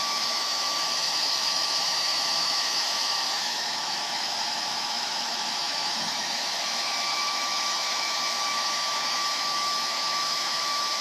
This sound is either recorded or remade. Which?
remade